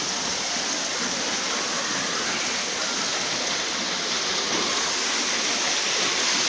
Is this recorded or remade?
recorded